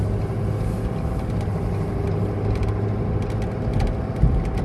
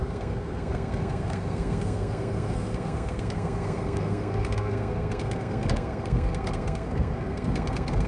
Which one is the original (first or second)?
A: first